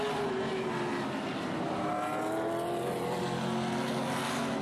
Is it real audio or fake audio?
real